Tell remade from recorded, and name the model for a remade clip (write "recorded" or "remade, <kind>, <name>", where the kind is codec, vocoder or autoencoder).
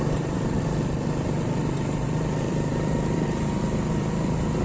remade, vocoder, BigVGAN v2